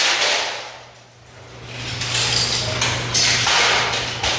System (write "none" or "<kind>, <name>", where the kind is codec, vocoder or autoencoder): none